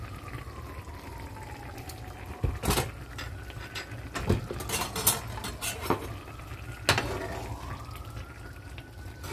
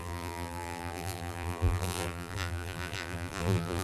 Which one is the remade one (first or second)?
second